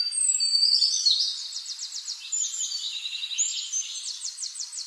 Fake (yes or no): yes